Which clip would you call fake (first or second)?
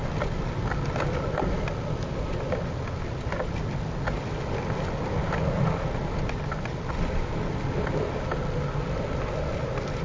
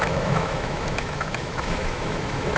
second